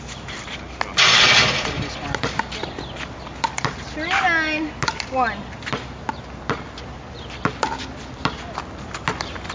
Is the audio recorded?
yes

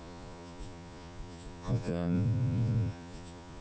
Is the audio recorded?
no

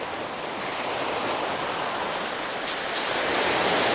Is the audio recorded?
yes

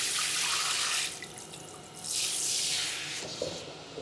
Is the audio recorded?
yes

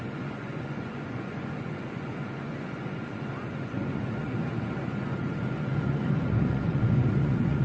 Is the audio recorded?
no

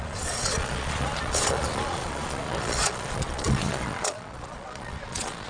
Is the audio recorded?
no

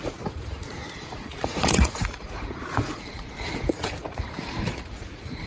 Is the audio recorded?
no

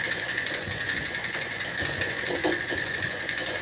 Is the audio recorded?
no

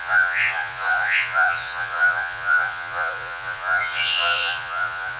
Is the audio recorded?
no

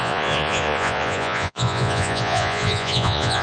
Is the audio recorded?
no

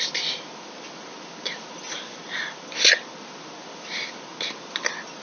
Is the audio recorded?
yes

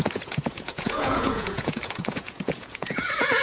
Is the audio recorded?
no